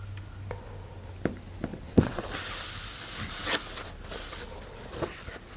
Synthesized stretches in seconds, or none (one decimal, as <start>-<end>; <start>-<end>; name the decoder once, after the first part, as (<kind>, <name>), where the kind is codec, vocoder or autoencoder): 1.7-2.2 (vocoder, WaveNeXt)